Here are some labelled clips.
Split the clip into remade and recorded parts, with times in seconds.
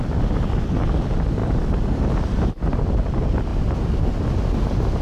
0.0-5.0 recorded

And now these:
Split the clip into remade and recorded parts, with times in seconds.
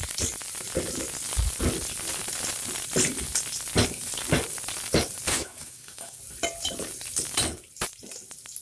0.0-5.3 recorded; 5.3-6.2 remade; 6.2-8.6 recorded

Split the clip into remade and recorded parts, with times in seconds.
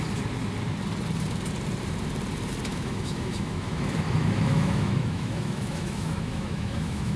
0.0-2.7 recorded; 2.7-7.2 remade